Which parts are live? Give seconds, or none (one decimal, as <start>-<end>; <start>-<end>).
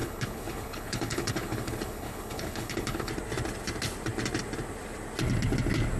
3.1-6.0